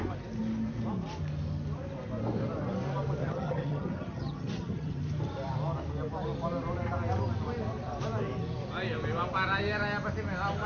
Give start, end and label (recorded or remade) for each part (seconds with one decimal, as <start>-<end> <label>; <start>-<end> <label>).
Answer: 0.0-3.2 recorded; 3.2-5.0 remade; 5.0-10.7 recorded

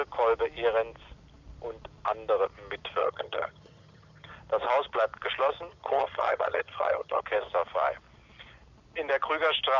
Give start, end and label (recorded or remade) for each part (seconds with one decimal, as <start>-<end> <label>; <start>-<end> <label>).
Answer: 0.0-3.0 recorded; 3.0-4.3 remade; 4.3-5.7 recorded; 5.7-7.2 remade; 7.2-9.8 recorded

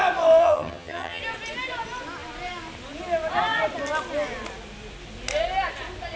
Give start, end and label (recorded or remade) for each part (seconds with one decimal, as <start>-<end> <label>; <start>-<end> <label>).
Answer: 0.0-0.4 recorded; 0.4-1.2 remade; 1.2-6.2 recorded

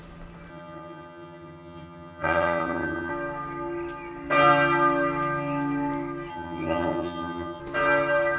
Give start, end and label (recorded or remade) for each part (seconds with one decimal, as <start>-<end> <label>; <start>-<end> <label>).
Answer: 0.0-0.5 recorded; 0.5-3.1 remade; 3.1-6.3 recorded; 6.3-7.6 remade; 7.6-8.4 recorded

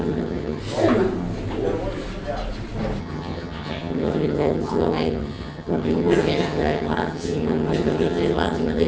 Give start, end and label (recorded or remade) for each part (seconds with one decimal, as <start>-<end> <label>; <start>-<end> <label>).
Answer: 0.0-0.6 remade; 0.6-3.0 recorded; 3.0-8.9 remade